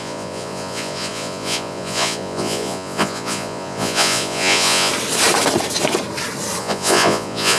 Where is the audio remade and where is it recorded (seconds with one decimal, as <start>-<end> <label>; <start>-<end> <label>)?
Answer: 0.0-4.9 remade; 4.9-6.6 recorded; 6.6-7.6 remade